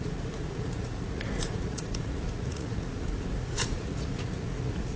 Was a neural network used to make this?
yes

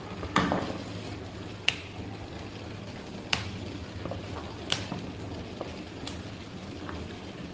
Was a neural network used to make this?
no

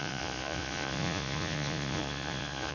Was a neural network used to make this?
yes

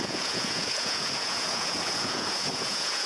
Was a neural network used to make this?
yes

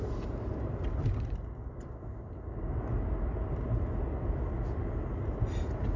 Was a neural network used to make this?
no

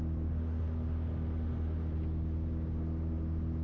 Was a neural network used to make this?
no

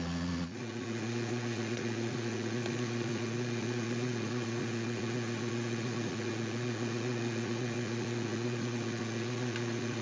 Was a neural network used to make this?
yes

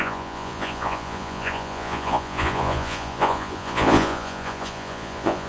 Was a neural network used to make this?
yes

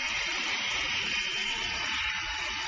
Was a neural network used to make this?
yes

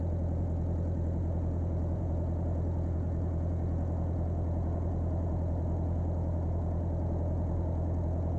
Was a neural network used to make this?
yes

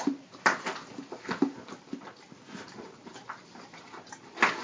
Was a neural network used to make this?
no